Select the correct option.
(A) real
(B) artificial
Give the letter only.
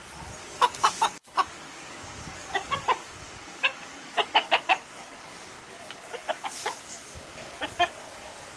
B